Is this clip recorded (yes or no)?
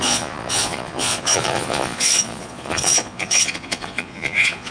no